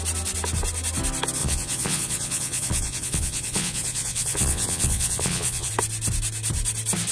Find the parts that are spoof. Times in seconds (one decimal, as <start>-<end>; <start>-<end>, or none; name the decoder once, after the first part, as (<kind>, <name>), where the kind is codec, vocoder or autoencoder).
1.4-5.7 (vocoder, Vocos)